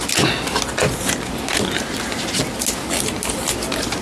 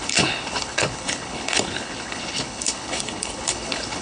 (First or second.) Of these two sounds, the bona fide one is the first